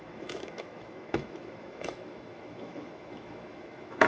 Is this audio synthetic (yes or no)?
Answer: yes